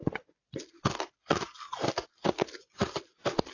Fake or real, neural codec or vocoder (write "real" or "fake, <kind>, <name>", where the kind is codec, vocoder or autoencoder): real